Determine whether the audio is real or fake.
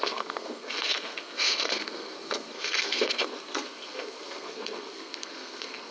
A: fake